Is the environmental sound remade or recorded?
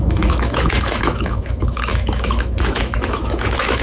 remade